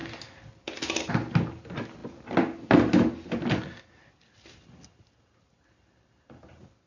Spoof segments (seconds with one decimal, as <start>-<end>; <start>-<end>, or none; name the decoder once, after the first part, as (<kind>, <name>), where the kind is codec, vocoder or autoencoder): none